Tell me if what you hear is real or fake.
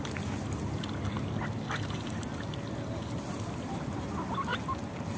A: real